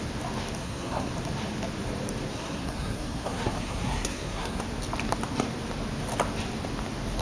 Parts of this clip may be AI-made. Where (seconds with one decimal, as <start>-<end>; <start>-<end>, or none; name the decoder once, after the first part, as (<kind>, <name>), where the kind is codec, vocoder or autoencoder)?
0.6-1.1 (codec, SNAC); 2.3-4.6